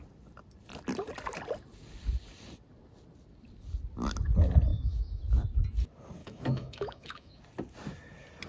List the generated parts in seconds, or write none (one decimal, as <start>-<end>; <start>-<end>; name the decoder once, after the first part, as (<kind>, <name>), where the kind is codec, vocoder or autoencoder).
4.7-5.2 (autoencoder, DAC-VAE); 6.2-7.4